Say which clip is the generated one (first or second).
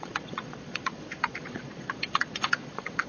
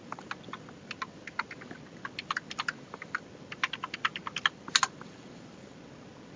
first